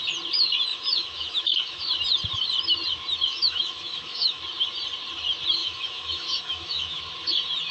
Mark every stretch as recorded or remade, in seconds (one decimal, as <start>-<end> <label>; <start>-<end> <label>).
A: 0.0-0.7 recorded; 0.7-1.8 remade; 1.8-3.3 recorded; 3.3-4.4 remade; 4.4-5.6 recorded; 5.6-7.0 remade; 7.0-7.7 recorded